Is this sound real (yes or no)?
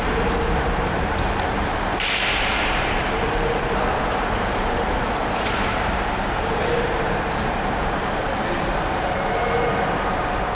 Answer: no